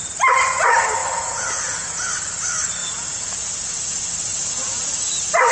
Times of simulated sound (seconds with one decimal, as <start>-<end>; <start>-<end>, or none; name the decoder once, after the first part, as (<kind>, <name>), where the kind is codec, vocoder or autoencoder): 1.0-2.1 (vocoder, Vocos); 2.8-3.8; 4.3-5.0